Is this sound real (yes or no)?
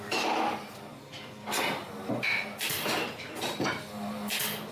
yes